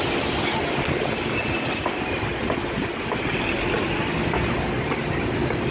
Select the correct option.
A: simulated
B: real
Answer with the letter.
B